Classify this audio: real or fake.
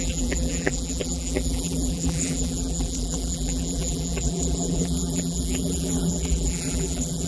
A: fake